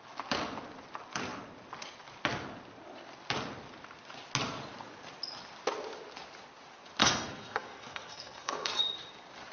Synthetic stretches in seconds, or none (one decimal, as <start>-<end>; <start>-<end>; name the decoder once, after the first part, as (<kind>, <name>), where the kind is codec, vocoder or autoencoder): 7.0-8.8 (codec, SNAC)